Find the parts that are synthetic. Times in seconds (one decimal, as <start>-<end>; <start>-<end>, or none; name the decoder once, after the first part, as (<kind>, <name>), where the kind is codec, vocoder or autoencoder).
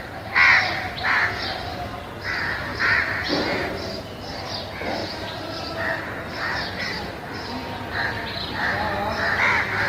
2.7-4.0 (vocoder, BigVGAN v2); 5.0-6.8